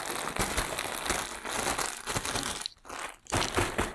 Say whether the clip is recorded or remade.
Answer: recorded